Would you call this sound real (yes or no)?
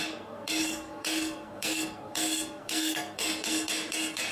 no